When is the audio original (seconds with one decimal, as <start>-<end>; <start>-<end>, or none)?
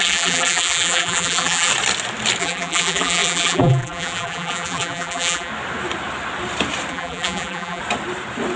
1.7-2.4; 5.5-6.9; 7.8-8.6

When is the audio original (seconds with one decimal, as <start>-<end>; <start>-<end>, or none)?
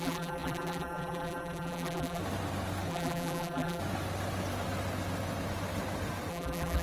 2.2-2.9; 3.8-6.3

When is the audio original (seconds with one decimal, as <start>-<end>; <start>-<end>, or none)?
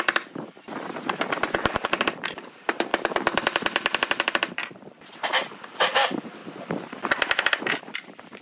6.4-7.8